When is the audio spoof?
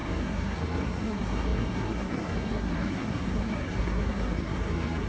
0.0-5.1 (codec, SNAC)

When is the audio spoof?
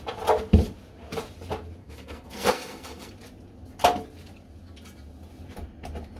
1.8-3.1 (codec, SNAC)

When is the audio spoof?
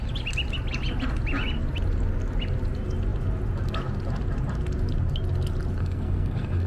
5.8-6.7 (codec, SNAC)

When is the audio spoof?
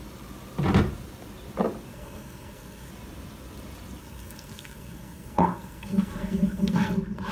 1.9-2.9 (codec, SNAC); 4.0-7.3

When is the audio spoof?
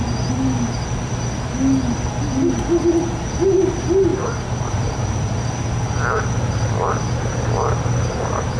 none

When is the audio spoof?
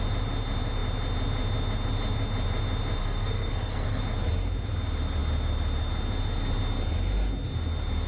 3.0-4.0 (codec, SNAC)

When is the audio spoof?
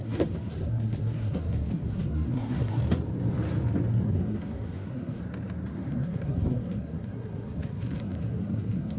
0.0-2.8 (codec, SNAC); 3.9-5.2; 5.7-9.0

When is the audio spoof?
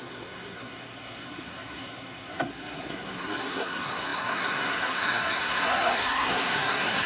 0.0-7.1 (codec, SNAC)